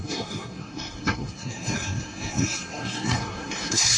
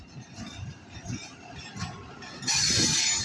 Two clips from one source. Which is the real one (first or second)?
second